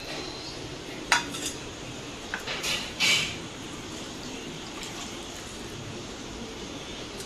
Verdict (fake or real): fake